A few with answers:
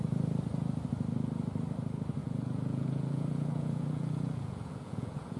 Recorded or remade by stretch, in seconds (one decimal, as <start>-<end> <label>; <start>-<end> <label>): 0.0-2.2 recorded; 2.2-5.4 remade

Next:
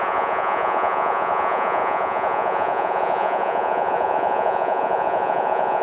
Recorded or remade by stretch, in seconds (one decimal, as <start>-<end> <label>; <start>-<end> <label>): 0.0-5.8 remade

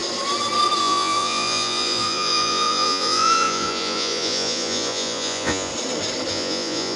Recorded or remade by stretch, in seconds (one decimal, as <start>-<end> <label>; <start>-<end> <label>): 0.0-0.8 recorded; 0.8-5.7 remade; 5.7-6.3 recorded; 6.3-7.0 remade